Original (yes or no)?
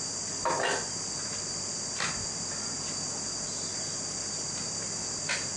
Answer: yes